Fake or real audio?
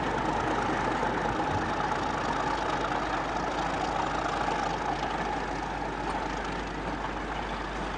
real